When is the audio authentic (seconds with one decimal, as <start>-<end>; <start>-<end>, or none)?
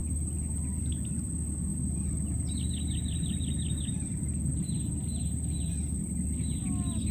0.0-7.1